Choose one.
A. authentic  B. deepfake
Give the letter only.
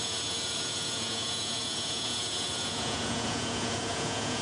B